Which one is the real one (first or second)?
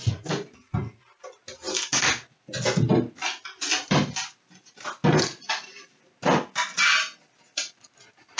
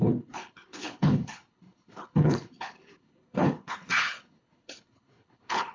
first